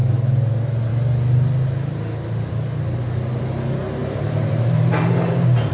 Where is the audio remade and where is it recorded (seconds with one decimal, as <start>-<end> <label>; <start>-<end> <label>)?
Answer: 0.0-4.0 recorded; 4.0-5.7 remade